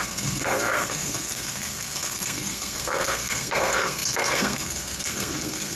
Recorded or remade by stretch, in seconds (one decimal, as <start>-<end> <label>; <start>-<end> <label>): 0.0-5.8 remade